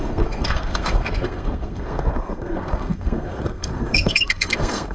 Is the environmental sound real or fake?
fake